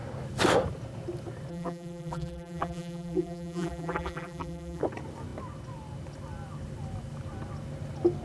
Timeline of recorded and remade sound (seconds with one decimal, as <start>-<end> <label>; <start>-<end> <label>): 0.0-1.5 recorded; 1.5-4.8 remade; 4.8-8.2 recorded